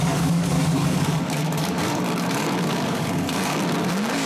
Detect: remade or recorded remade